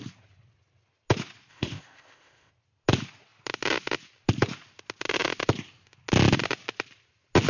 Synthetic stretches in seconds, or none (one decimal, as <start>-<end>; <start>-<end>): 1.5-2.5